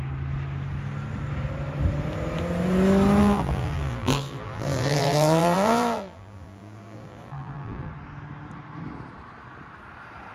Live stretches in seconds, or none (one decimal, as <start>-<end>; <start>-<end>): 0.0-3.2; 7.9-10.3